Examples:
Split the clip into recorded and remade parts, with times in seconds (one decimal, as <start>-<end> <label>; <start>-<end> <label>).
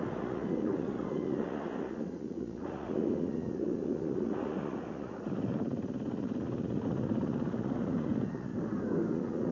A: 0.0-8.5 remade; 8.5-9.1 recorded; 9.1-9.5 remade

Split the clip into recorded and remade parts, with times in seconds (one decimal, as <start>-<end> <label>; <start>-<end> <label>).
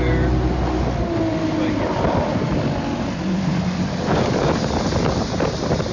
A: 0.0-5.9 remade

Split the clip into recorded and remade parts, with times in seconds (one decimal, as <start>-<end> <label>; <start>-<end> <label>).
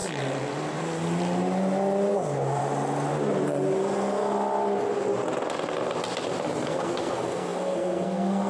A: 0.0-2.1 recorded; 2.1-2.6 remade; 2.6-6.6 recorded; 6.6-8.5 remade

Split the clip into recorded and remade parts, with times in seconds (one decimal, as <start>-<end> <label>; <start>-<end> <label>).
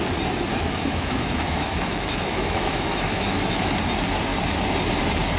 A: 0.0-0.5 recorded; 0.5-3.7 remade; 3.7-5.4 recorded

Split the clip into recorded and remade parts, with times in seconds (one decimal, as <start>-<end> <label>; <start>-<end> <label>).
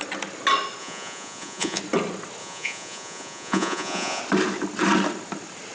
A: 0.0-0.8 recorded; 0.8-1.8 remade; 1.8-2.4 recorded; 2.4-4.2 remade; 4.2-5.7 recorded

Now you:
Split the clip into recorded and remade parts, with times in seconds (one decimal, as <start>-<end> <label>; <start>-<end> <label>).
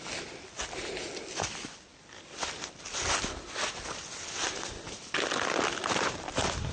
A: 0.0-1.9 remade; 1.9-5.9 recorded; 5.9-6.7 remade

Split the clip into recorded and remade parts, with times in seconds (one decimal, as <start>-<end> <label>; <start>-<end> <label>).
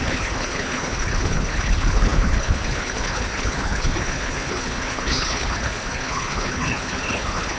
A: 0.0-7.6 remade